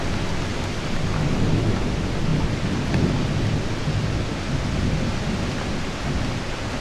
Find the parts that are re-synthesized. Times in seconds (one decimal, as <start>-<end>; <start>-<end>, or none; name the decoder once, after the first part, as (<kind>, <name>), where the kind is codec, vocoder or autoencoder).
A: 2.3-3.1 (vocoder, BigVGAN v2); 5.1-5.7